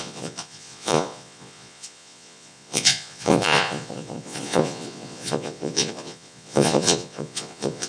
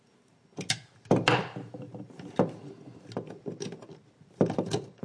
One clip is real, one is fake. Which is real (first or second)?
second